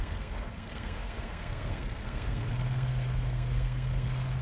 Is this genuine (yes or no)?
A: no